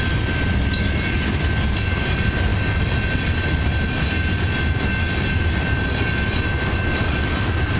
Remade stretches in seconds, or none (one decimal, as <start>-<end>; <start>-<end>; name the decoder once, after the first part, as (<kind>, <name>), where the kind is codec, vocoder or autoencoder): none